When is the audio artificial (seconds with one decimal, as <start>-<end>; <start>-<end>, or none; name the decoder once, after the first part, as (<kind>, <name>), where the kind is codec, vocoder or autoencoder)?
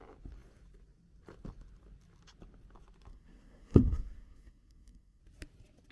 3.1-5.2 (codec, SNAC)